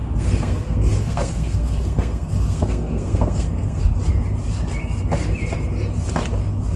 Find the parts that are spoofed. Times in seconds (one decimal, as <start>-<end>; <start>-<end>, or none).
0.0-3.8